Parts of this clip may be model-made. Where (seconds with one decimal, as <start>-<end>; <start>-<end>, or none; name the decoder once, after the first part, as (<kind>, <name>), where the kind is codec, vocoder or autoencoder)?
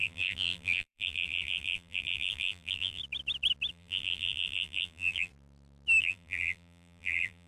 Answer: 0.0-3.0 (vocoder, BigVGAN v2); 3.7-5.3; 6.0-7.5